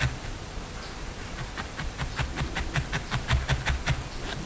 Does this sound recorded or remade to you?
recorded